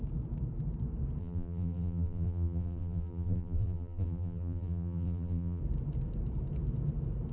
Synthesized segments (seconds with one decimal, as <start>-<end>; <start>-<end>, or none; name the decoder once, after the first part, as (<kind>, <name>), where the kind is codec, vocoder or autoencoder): 1.2-5.6 (vocoder, BigVGAN v2)